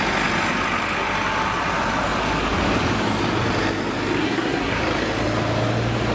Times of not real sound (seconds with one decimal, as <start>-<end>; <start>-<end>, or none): 4.2-4.8